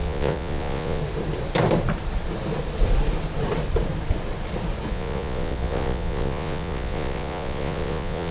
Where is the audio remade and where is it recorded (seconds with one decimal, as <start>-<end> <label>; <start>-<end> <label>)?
0.0-1.0 remade; 1.0-4.9 recorded; 4.9-8.3 remade